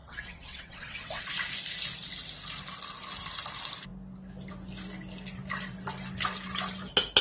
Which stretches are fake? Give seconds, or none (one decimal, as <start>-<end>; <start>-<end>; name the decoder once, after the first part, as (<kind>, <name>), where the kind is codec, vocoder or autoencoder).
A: 0.0-1.2 (vocoder, WaveNeXt)